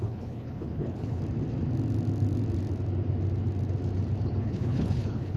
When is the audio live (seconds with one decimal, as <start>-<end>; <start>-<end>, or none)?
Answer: 1.2-4.4